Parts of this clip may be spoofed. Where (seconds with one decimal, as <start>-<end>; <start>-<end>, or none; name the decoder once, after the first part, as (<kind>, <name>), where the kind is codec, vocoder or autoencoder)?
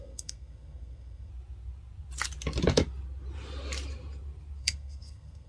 0.0-1.3 (codec, SNAC); 4.6-5.5